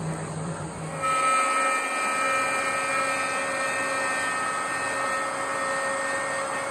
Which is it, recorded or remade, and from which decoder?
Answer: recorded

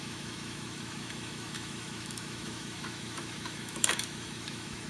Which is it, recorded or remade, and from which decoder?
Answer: remade, autoencoder, DAC-VAE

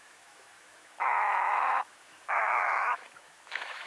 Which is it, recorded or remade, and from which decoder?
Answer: remade, autoencoder, DAC-VAE